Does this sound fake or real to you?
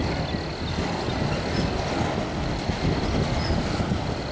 real